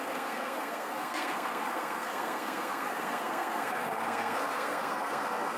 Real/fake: fake